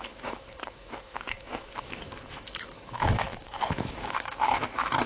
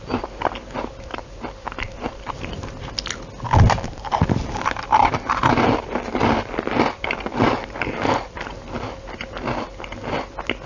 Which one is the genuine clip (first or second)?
second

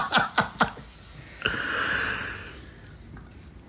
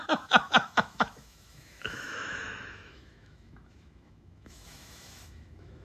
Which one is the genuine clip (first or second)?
first